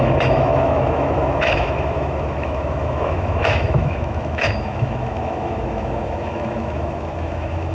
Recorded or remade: remade